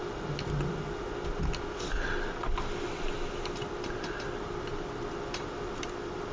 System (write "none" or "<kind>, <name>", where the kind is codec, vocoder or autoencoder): none